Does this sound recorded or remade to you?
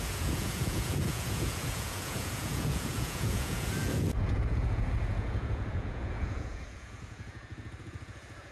remade